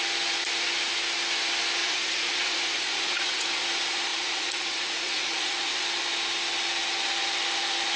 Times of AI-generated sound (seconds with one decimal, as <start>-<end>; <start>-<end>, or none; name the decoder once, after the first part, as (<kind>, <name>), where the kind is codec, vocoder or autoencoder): 1.8-3.6 (vocoder, Vocos); 4.1-5.8